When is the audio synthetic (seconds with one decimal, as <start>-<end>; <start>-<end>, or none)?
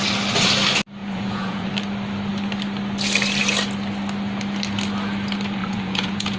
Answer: 1.0-1.7; 5.6-6.4